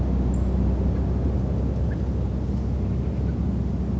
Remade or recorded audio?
recorded